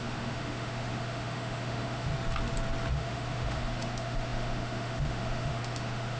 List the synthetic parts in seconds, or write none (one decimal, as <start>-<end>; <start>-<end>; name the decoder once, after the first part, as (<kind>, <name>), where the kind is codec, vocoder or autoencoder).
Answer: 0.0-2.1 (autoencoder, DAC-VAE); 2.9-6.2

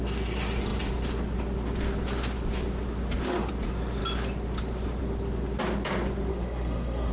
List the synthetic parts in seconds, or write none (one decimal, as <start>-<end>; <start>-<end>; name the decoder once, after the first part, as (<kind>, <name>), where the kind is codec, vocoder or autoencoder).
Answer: 6.3-7.1 (codec, SNAC)

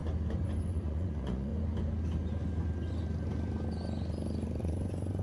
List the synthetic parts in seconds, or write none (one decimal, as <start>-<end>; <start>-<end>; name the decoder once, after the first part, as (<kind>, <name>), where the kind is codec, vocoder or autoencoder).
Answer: 0.7-1.5 (vocoder, Vocos); 4.6-5.2

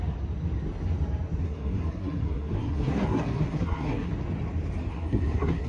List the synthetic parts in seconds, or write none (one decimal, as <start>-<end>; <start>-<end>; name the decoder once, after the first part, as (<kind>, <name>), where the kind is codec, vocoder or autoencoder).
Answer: 1.4-4.1 (codec, SNAC); 4.9-5.7

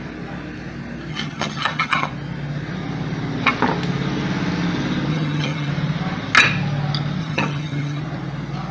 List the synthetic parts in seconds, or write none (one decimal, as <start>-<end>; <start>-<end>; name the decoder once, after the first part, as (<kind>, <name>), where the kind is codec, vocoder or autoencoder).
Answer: 1.1-2.1 (vocoder, HiFi-GAN); 5.1-5.7; 7.2-8.0